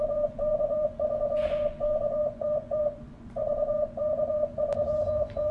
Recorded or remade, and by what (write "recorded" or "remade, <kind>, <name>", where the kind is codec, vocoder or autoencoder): remade, vocoder, Vocos